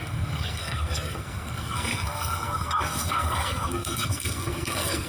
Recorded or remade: remade